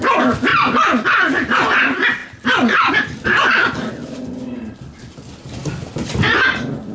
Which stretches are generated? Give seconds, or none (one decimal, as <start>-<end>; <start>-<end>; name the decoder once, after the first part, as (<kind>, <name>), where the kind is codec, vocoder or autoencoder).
none